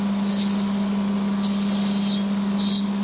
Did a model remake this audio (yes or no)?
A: no